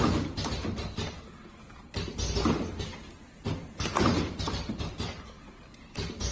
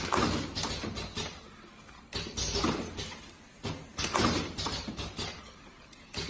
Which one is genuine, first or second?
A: second